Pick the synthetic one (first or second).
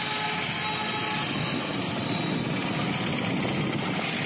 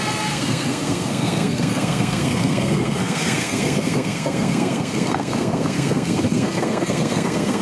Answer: second